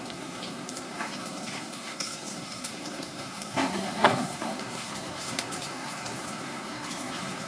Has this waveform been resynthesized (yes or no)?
yes